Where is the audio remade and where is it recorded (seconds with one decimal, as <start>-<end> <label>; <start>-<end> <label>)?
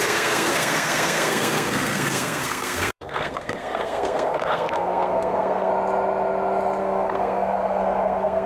0.0-5.7 remade; 5.7-6.8 recorded; 6.8-8.5 remade